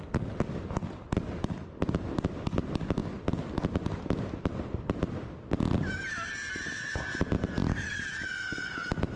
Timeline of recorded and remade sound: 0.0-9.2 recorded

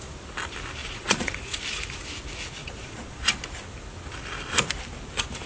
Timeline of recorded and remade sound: 0.0-0.8 recorded; 0.8-1.6 remade; 1.6-2.6 recorded; 2.6-3.3 remade; 3.3-5.5 recorded

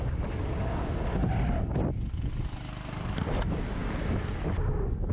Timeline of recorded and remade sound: 0.0-5.1 recorded

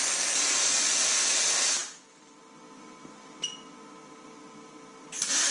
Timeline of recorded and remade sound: 0.0-5.5 recorded

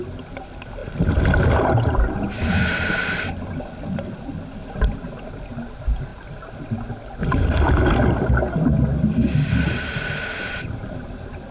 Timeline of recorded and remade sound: 0.0-11.5 recorded

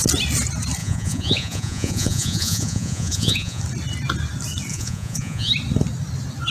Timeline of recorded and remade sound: 0.0-0.8 recorded; 0.8-3.6 remade; 3.6-4.7 recorded; 4.7-5.5 remade; 5.5-6.5 recorded

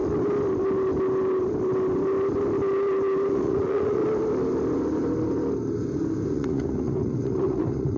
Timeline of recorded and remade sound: 0.0-3.3 recorded; 3.3-4.0 remade; 4.0-6.3 recorded; 6.3-8.0 remade